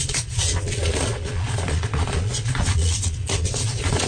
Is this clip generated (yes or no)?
yes